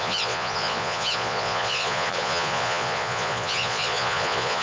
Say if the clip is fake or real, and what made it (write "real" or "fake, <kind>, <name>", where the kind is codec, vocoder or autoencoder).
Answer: fake, vocoder, Vocos